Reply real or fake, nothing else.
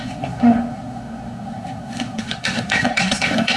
fake